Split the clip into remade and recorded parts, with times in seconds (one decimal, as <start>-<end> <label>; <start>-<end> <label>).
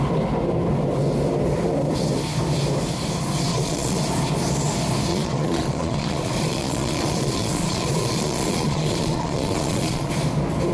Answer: 0.0-3.5 recorded; 3.5-4.0 remade; 4.0-5.1 recorded; 5.1-10.1 remade; 10.1-10.7 recorded